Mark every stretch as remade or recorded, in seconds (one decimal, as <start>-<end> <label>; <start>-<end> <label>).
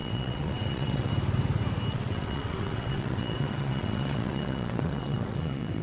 0.0-1.1 remade; 1.1-1.9 recorded; 1.9-5.8 remade